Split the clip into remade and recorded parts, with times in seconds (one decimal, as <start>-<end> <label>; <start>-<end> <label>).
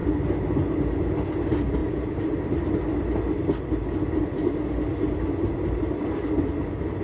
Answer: 0.0-7.0 recorded